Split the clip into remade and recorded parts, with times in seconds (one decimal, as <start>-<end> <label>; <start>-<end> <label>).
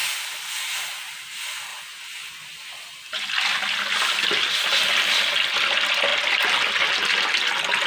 0.0-7.9 recorded